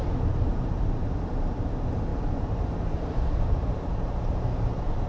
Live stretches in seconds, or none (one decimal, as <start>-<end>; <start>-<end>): 1.3-2.1